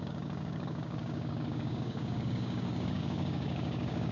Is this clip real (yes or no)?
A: no